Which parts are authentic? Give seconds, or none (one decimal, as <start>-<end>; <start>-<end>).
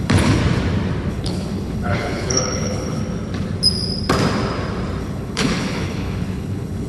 0.4-1.1; 3.0-5.0